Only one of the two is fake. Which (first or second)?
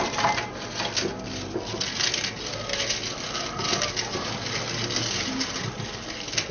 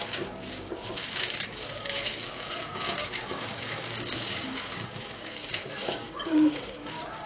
second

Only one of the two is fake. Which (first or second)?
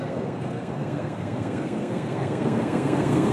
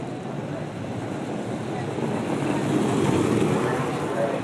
first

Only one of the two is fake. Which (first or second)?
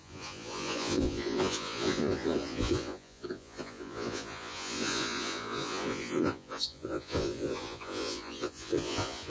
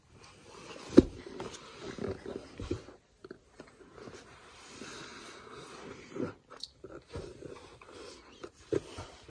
first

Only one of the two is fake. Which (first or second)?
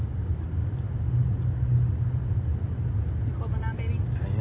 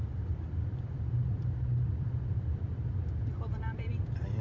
second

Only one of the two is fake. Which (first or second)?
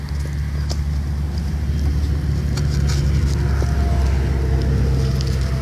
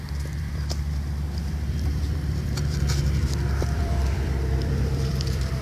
second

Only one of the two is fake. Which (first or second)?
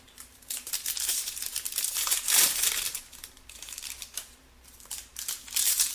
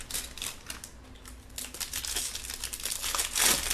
first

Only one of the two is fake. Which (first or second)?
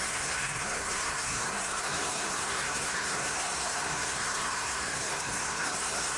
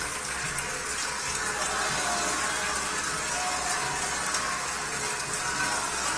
first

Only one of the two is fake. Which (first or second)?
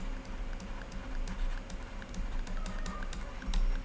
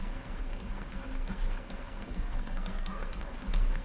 second